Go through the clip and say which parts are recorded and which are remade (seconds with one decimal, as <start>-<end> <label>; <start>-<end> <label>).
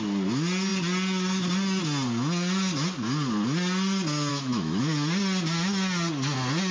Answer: 0.0-4.3 recorded; 4.3-4.8 remade; 4.8-6.7 recorded